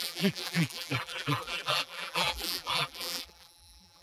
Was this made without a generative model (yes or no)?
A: no